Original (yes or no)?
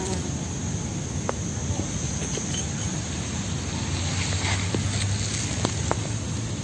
yes